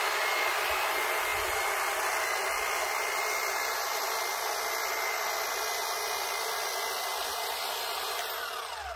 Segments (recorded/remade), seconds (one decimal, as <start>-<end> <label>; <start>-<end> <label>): 0.0-9.0 recorded